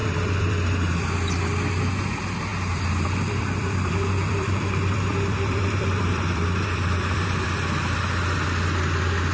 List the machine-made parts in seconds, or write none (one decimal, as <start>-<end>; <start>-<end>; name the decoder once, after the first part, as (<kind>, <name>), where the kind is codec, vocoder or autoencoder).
0.0-1.4 (vocoder, BigVGAN v2); 2.5-7.6